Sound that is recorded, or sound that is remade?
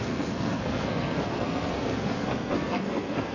remade